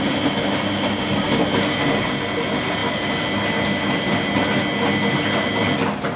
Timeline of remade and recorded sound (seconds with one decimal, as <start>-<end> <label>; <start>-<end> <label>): 0.0-6.2 recorded